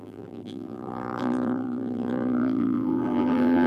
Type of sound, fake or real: fake